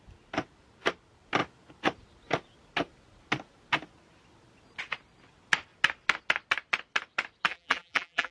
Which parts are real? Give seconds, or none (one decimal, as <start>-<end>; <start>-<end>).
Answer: 0.0-7.5